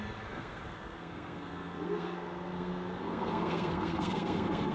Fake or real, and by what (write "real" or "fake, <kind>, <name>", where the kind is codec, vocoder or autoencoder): fake, codec, SNAC